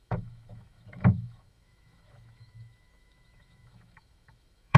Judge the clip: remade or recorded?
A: remade